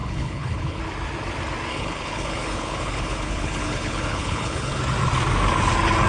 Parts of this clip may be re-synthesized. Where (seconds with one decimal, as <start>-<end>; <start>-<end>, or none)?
0.0-0.8; 1.7-4.8